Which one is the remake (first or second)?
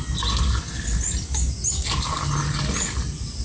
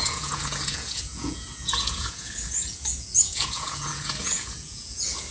second